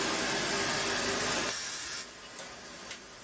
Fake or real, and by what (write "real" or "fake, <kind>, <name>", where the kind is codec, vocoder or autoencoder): real